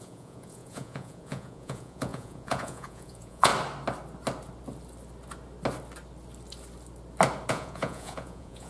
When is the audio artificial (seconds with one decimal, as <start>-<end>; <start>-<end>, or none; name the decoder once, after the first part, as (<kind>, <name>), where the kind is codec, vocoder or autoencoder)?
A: 0.0-3.5 (vocoder, Vocos); 7.5-8.7